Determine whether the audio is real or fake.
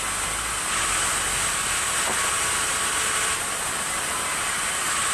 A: real